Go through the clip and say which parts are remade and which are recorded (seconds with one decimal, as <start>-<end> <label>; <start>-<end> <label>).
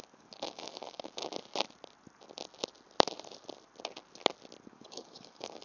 0.0-1.2 remade; 1.2-4.6 recorded; 4.6-5.6 remade